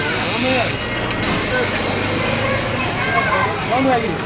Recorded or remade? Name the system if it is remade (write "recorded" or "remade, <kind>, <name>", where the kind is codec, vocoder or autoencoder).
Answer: recorded